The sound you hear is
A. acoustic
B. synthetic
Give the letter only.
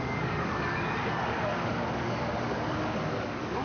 B